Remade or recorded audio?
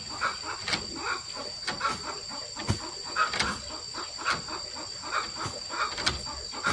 recorded